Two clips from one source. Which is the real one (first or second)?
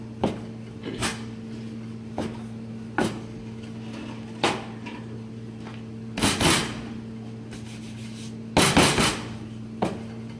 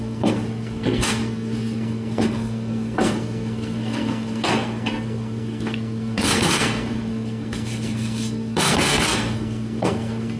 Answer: first